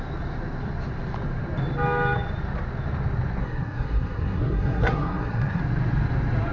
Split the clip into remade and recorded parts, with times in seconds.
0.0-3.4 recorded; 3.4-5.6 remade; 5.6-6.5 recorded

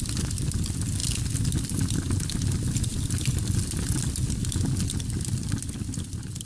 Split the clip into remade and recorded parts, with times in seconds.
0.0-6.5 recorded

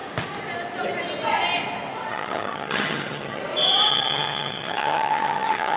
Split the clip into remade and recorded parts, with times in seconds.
0.0-2.1 recorded; 2.1-3.4 remade; 3.4-3.9 recorded; 3.9-5.8 remade

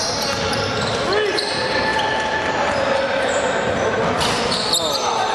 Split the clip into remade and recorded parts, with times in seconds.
0.0-5.3 recorded